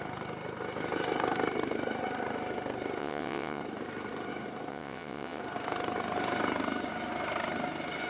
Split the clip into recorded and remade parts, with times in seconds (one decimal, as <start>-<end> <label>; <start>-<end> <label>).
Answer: 0.0-3.0 recorded; 3.0-3.6 remade; 3.6-4.7 recorded; 4.7-5.4 remade; 5.4-8.1 recorded

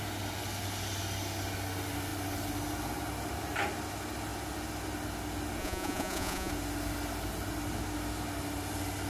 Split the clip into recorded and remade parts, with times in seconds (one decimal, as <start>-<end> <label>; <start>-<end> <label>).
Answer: 0.0-5.6 recorded; 5.6-6.5 remade; 6.5-9.1 recorded

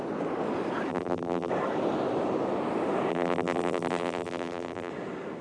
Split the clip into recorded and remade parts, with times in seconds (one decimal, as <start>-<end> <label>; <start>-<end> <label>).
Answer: 0.0-0.9 recorded; 0.9-1.5 remade; 1.5-3.1 recorded; 3.1-4.9 remade; 4.9-5.4 recorded

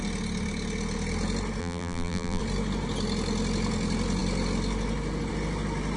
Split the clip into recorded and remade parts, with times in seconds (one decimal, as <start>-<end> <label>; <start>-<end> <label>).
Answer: 0.0-1.6 recorded; 1.6-2.4 remade; 2.4-6.0 recorded

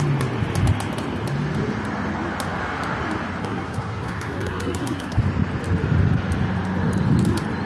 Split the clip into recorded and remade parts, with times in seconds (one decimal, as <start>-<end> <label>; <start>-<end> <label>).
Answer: 0.0-3.4 recorded; 3.4-5.2 remade; 5.2-7.7 recorded

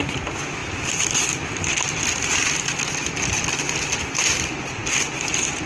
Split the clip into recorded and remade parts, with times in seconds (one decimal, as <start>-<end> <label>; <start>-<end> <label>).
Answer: 0.0-5.7 remade